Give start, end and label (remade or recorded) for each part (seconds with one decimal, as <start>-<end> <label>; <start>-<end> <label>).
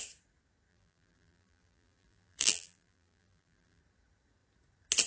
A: 0.0-0.7 recorded; 0.7-3.8 remade; 3.8-5.1 recorded